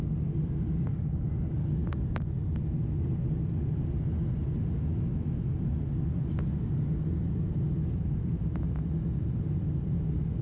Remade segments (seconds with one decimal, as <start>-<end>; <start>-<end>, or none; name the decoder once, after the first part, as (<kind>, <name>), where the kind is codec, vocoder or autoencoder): none